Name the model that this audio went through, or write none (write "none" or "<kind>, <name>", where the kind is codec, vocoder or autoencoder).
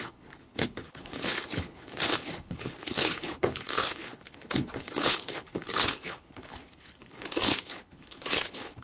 codec, HILCodec